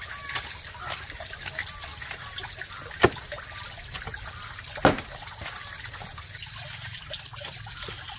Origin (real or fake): real